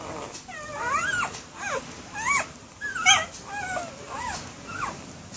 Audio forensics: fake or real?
real